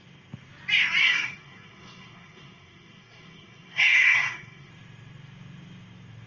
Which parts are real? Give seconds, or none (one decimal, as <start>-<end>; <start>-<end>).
0.0-1.0; 4.7-6.3